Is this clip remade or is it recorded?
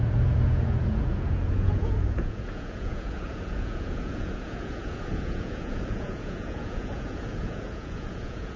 remade